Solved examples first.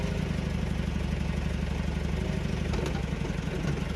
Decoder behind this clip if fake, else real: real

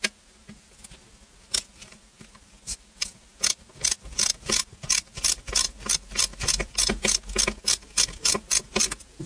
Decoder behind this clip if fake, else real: real